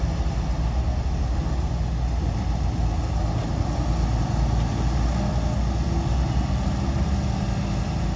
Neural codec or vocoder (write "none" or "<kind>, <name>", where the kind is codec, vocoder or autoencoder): none